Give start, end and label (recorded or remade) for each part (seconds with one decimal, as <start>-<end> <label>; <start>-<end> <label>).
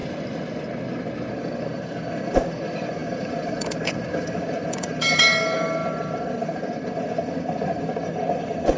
0.0-1.3 recorded; 1.3-8.8 remade